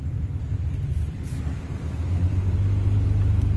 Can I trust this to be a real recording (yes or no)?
no